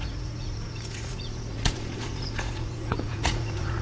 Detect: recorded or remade remade